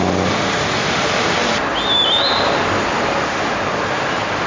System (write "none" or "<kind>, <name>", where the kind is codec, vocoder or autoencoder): none